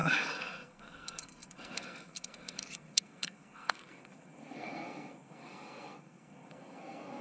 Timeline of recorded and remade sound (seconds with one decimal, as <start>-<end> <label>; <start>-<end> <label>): 0.0-7.2 remade